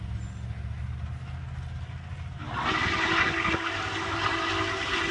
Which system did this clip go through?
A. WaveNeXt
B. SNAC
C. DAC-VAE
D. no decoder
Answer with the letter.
D